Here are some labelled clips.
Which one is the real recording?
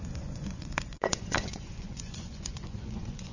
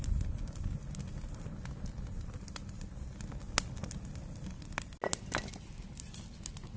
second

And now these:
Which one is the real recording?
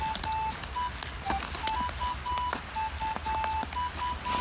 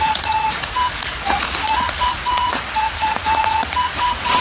first